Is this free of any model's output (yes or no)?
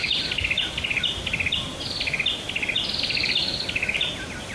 yes